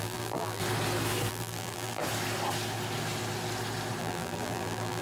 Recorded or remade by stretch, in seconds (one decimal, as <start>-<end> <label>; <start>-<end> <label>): 0.0-0.6 remade; 0.6-1.3 recorded; 1.3-2.0 remade; 2.0-4.0 recorded; 4.0-5.0 remade